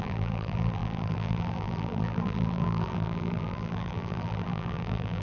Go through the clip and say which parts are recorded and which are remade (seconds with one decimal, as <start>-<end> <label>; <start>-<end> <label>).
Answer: 0.0-5.2 remade